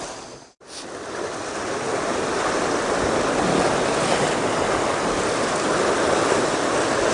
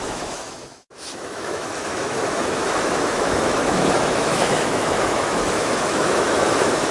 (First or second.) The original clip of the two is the first